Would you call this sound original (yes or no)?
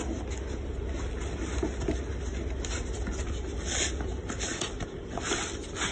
yes